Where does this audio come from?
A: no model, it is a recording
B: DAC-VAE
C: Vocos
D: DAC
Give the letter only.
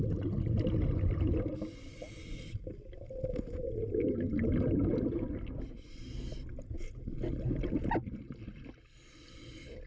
A